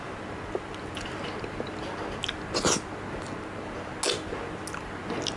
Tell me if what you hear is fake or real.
real